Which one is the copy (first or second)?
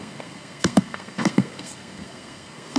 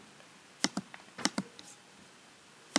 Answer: first